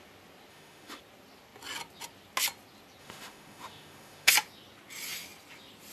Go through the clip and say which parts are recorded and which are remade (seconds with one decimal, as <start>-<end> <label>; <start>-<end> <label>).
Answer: 0.0-0.5 recorded; 0.5-1.0 remade; 1.0-3.0 recorded; 3.0-4.3 remade; 4.3-5.9 recorded